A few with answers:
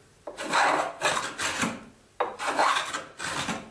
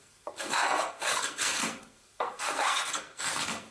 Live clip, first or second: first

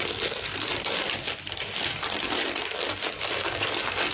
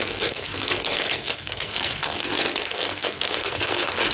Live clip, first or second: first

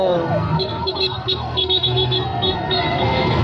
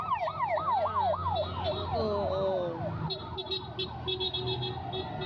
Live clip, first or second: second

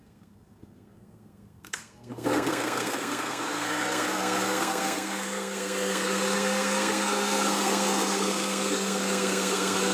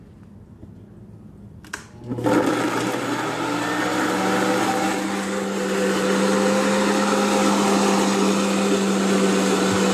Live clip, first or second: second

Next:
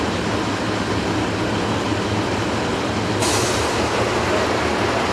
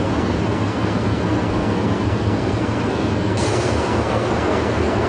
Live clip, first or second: first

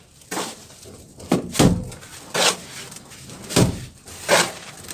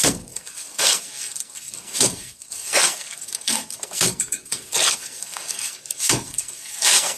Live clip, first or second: first